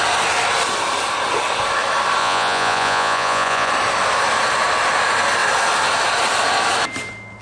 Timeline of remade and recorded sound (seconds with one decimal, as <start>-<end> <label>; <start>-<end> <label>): 0.0-2.2 recorded; 2.2-3.7 remade; 3.7-7.4 recorded